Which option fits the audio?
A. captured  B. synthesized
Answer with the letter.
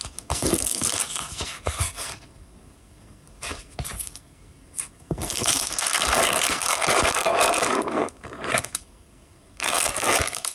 B